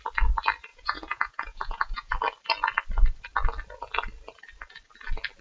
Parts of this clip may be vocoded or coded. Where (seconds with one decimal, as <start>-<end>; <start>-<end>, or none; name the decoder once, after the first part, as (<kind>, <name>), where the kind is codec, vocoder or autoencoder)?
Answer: 0.7-2.1 (vocoder, Vocos)